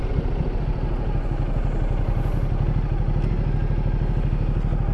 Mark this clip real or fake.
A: real